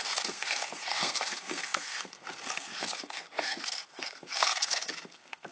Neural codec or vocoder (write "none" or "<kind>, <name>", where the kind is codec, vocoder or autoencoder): codec, SNAC